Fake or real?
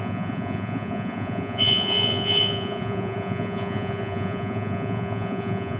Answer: fake